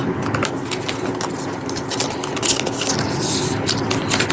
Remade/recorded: recorded